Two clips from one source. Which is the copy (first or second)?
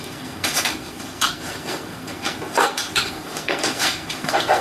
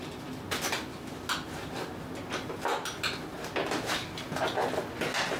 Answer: first